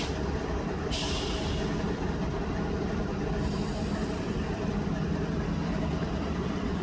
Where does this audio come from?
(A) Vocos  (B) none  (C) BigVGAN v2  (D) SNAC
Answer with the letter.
C